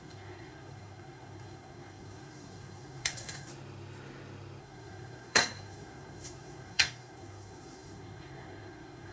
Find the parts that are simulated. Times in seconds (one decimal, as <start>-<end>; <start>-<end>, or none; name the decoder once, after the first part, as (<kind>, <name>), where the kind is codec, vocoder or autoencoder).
0.0-3.5 (codec, SNAC); 4.6-9.1